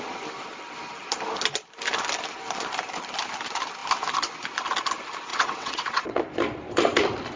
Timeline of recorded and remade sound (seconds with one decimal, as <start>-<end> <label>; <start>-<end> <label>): 0.0-5.3 recorded; 5.3-6.2 remade; 6.2-7.4 recorded